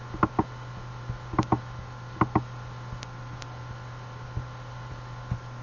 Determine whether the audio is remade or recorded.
recorded